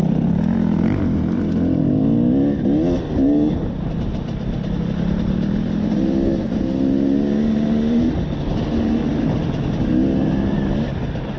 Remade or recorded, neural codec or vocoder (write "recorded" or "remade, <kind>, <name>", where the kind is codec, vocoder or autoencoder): recorded